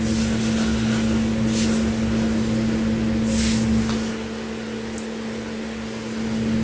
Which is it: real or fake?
real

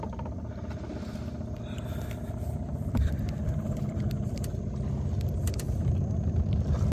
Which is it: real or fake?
fake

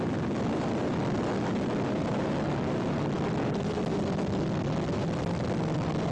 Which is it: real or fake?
real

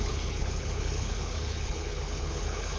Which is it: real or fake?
fake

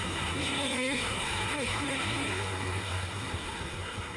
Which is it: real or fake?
fake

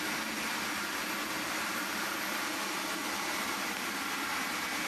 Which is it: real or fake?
real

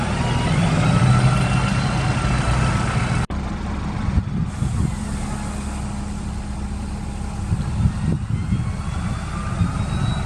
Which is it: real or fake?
real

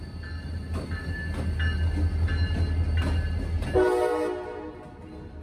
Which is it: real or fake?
real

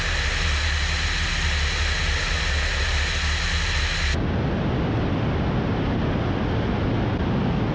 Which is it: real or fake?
real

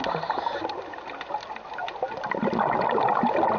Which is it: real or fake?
real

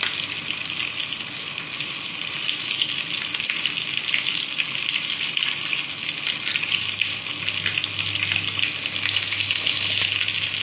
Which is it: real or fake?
real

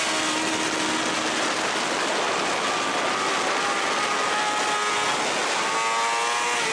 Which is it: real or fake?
real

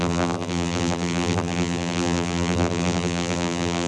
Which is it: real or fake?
fake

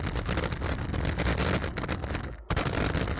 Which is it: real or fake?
real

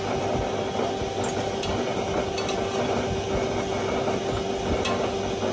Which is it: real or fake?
real